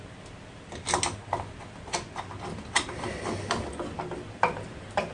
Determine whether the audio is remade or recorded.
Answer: recorded